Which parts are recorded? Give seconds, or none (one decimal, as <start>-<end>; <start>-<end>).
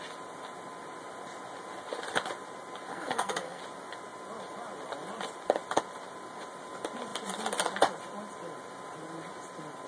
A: 0.0-2.9; 3.6-9.9